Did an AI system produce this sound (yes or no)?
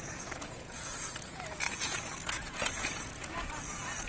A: yes